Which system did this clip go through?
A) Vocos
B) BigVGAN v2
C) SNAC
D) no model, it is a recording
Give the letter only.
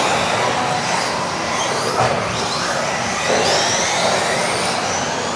D